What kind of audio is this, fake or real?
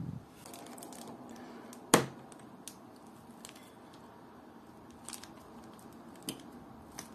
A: real